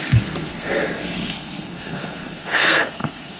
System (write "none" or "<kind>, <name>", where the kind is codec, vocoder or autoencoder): codec, SNAC